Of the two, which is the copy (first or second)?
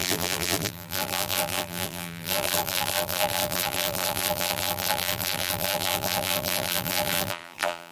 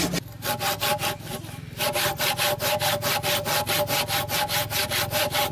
first